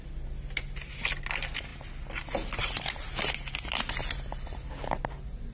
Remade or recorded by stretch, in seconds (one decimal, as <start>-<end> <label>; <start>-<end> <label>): 0.0-5.5 recorded